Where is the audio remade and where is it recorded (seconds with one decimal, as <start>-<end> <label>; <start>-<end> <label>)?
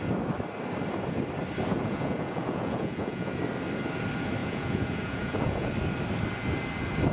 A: 0.0-1.7 recorded; 1.7-3.3 remade; 3.3-4.4 recorded; 4.4-5.7 remade; 5.7-7.1 recorded